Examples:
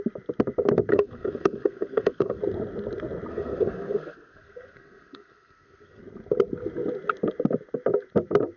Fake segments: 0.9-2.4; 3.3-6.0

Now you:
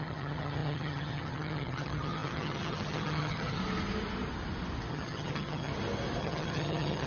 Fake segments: 0.0-3.6; 4.9-5.7; 6.2-7.1